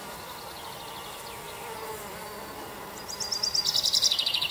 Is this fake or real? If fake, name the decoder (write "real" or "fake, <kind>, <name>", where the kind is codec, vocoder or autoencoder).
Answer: real